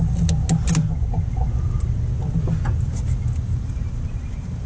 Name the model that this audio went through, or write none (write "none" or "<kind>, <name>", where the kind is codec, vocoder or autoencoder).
none